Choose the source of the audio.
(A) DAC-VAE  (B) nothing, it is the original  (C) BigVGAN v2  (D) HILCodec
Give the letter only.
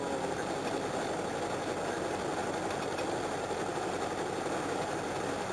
B